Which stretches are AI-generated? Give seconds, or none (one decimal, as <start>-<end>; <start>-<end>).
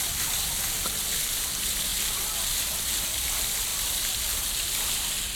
none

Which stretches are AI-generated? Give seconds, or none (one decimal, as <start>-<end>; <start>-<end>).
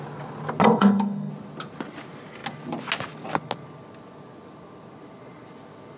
0.6-1.3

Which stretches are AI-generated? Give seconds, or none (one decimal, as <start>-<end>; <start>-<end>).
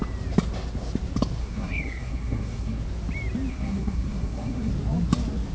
1.4-2.8; 3.5-4.7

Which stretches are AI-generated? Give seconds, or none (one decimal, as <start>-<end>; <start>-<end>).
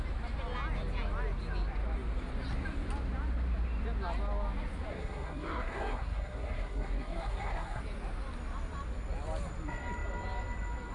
4.9-7.8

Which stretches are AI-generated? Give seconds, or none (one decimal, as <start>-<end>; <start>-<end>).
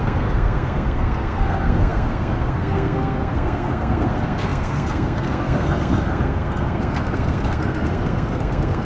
0.0-8.8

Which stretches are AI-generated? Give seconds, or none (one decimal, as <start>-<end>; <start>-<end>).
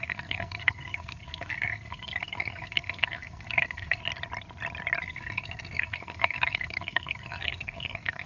0.0-4.0; 5.0-8.3